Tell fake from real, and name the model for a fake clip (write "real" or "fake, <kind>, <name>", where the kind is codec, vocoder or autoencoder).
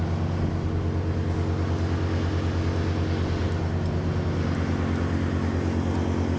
real